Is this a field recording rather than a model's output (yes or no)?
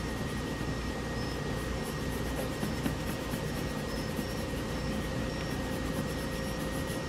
no